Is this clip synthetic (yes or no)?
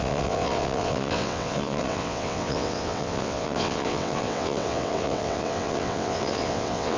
yes